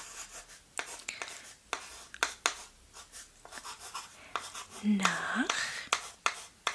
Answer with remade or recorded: recorded